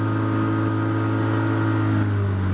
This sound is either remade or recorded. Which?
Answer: recorded